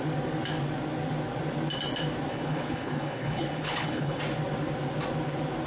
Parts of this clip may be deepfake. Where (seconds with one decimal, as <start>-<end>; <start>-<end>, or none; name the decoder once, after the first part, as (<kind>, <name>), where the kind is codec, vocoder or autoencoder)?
2.3-4.2 (codec, HILCodec)